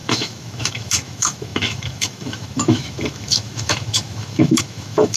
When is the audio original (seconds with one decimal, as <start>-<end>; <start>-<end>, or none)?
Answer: none